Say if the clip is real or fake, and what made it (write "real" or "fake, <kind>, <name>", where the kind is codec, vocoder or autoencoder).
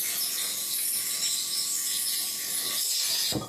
real